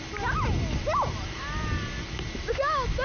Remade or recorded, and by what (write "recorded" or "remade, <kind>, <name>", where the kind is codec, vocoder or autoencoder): recorded